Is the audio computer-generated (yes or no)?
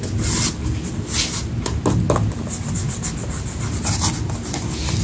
no